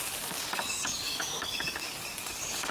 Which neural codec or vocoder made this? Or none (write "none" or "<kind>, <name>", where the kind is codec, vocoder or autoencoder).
codec, DAC